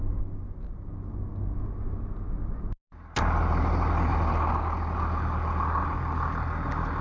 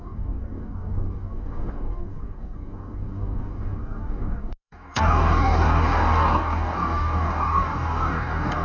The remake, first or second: second